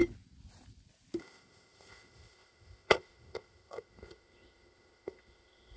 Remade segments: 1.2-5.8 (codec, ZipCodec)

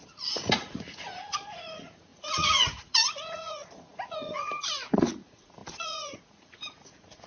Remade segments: 0.0-7.3 (vocoder, Vocos)

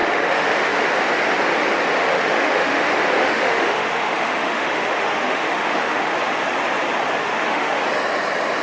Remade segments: 0.0-0.8 (autoencoder, DAC-VAE); 1.9-2.8; 3.2-6.1; 7.2-7.8

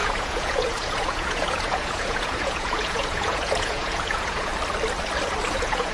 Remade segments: 0.0-4.5 (vocoder, Vocos); 5.5-5.9